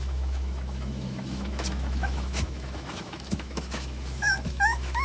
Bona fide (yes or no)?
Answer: no